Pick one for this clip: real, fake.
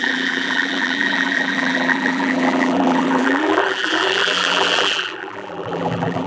fake